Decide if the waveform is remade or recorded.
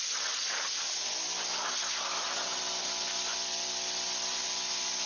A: recorded